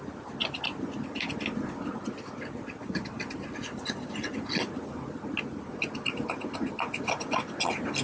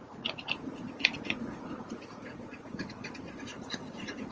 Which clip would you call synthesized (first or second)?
second